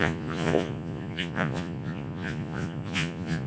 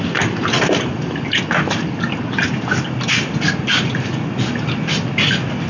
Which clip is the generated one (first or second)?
first